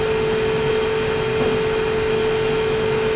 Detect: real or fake real